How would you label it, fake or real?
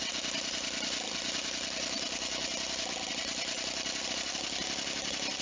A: real